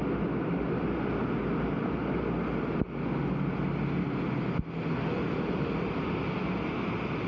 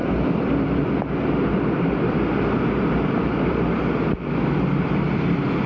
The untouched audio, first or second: first